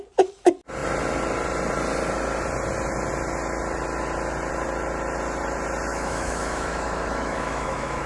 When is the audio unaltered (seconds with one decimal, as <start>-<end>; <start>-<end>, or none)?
0.0-5.9